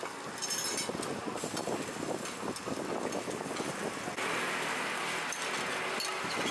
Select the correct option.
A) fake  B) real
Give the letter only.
B